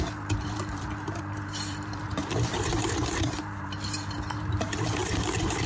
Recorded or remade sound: remade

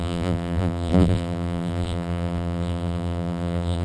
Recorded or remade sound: remade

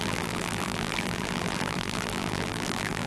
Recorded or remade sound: remade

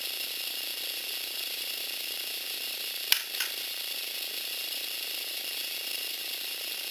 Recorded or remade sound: remade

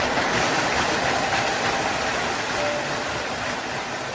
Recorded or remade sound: recorded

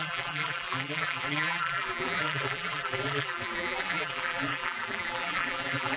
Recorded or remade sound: remade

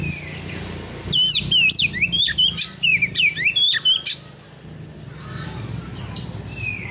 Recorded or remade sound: remade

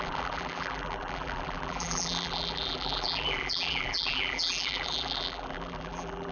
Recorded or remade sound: remade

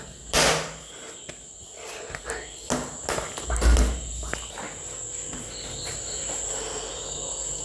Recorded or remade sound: recorded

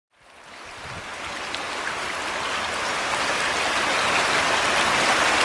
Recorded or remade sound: recorded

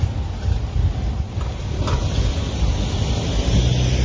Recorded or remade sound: recorded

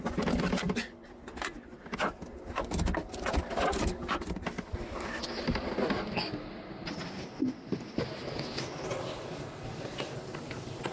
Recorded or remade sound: recorded